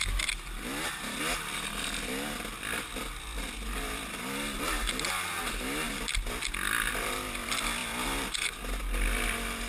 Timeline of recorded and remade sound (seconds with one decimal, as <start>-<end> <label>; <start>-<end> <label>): 0.0-9.7 recorded